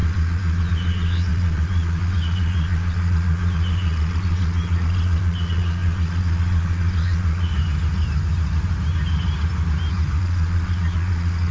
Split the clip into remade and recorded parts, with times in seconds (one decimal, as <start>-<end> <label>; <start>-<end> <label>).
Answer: 0.0-7.5 remade; 7.5-10.2 recorded; 10.2-11.5 remade